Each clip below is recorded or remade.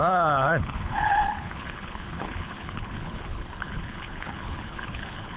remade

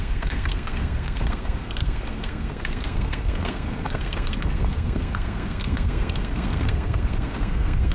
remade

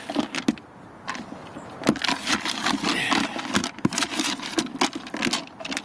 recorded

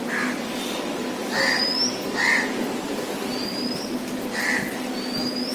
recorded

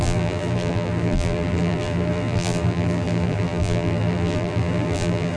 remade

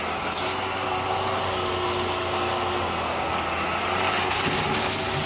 recorded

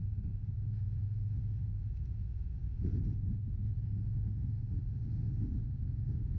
remade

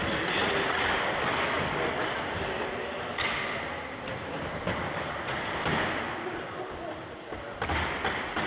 recorded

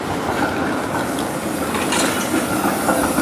recorded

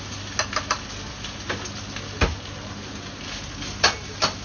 recorded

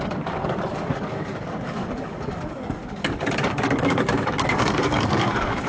remade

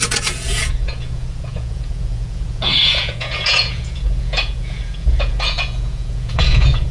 remade